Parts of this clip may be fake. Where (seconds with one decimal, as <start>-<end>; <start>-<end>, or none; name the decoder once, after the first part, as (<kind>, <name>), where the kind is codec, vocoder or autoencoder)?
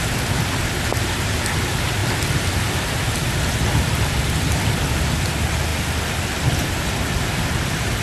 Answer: 2.0-4.6 (vocoder, BigVGAN v2)